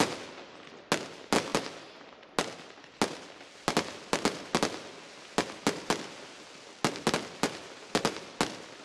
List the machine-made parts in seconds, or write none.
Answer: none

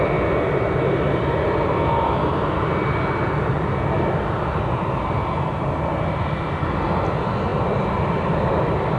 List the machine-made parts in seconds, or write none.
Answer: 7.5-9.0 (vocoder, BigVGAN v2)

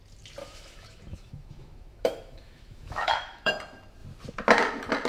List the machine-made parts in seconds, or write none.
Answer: 0.4-3.5 (autoencoder, DAC-VAE)

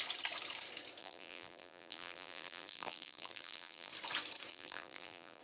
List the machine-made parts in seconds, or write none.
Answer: 1.0-3.9 (vocoder, BigVGAN v2); 4.5-5.4